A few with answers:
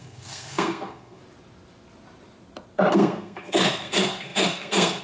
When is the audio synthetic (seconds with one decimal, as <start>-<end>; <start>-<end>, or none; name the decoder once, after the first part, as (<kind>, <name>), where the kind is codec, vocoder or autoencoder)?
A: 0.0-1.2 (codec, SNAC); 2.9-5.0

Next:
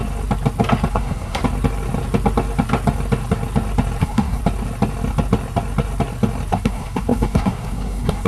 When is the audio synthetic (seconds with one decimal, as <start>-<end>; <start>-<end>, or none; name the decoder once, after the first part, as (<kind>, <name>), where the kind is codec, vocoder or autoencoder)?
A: 0.9-1.4 (codec, SNAC); 4.0-4.4; 6.5-8.3

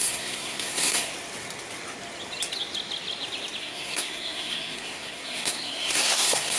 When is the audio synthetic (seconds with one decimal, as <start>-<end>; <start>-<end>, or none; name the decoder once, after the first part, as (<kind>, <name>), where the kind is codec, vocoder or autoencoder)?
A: 0.0-1.1 (codec, SNAC); 3.6-6.6

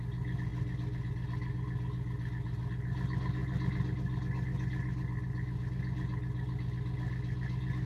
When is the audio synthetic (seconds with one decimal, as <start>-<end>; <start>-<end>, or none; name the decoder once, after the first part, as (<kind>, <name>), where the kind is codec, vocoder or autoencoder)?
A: none